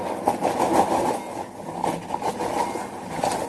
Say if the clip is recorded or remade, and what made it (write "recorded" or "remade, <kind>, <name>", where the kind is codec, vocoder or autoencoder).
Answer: recorded